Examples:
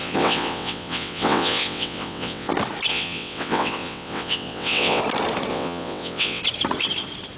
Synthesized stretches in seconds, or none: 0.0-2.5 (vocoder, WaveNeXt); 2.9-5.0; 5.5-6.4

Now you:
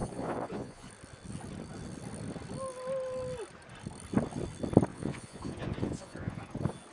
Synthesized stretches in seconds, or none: 0.0-0.9 (vocoder, Vocos); 4.9-6.4

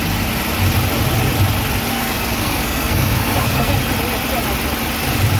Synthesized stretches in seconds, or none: 1.9-3.7 (codec, SNAC)

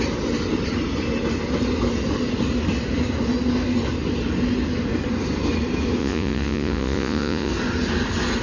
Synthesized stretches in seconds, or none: 6.0-7.5 (vocoder, Vocos)

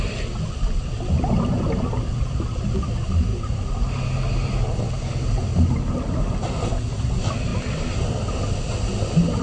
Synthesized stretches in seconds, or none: none

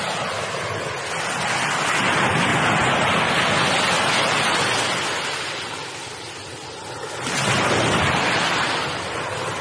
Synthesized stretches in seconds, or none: none

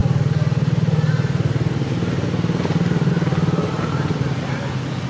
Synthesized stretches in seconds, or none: none

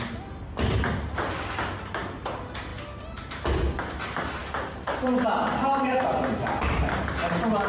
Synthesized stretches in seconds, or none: none